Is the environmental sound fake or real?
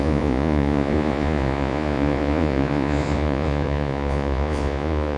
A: fake